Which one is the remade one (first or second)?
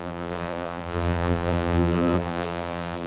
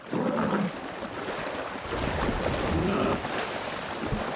first